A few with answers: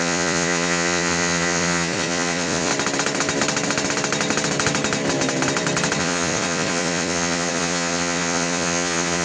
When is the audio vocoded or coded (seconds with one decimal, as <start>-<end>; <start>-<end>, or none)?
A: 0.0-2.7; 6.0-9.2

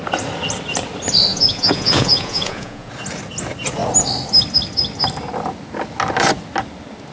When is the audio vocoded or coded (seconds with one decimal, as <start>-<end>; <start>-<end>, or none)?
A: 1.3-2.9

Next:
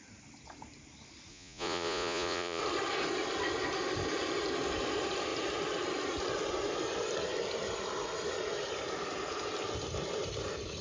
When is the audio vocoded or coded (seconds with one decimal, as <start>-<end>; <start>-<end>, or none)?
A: 1.3-2.6